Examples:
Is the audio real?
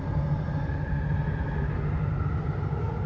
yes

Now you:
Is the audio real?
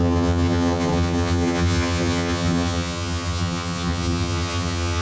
no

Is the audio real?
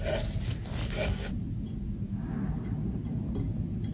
yes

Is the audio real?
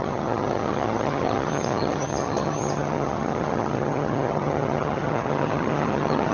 no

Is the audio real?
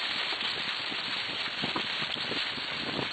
yes